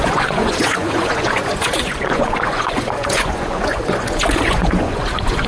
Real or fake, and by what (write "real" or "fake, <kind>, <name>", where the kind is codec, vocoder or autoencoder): fake, vocoder, Vocos